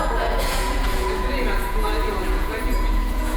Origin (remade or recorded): remade